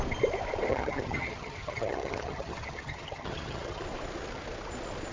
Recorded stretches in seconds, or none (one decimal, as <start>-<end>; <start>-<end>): 0.0-0.7; 3.8-5.1